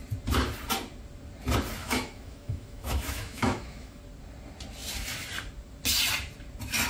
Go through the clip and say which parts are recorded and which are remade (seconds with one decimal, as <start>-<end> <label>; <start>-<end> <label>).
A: 0.0-1.8 recorded; 1.8-4.0 remade; 4.0-6.9 recorded